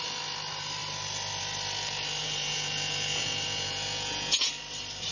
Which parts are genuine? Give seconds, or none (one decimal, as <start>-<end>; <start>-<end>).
0.0-2.2; 4.5-5.1

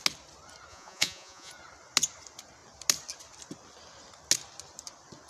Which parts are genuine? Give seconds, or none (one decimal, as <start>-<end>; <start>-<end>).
0.0-0.7; 1.5-5.3

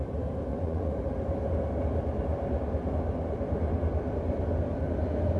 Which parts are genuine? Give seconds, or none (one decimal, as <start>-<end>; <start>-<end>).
0.0-0.5; 1.0-5.4

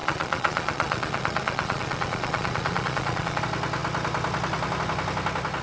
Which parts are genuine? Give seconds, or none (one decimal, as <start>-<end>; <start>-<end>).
3.4-5.6